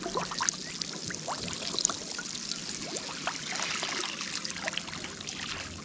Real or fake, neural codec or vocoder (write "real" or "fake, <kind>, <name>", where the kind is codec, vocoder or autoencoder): real